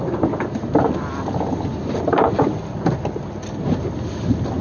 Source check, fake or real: real